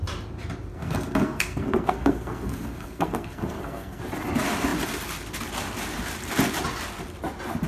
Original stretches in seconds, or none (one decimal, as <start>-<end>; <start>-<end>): 0.0-0.7; 4.0-7.7